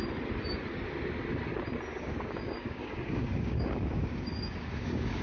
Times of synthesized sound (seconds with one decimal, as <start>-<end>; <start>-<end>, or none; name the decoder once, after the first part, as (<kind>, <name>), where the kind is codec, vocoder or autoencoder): 1.9-5.2 (codec, DAC)